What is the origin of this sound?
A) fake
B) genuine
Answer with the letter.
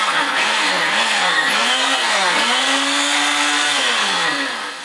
A